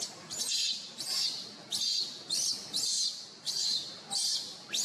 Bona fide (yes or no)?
yes